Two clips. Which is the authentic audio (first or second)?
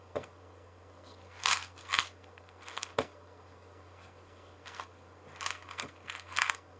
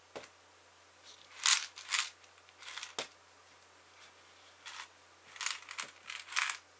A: second